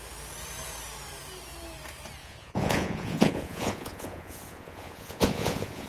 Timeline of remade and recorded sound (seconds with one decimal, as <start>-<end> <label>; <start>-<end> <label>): 0.0-2.2 recorded; 2.2-5.9 remade

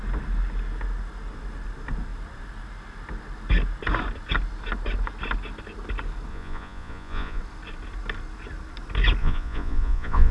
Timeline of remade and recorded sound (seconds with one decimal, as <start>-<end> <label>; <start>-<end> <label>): 0.0-6.3 recorded; 6.3-7.4 remade; 7.4-9.2 recorded; 9.2-10.3 remade